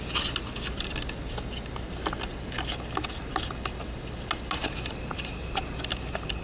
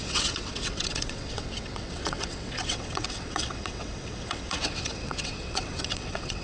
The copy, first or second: second